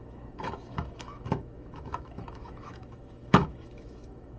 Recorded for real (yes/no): no